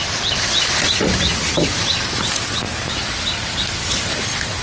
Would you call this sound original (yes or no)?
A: yes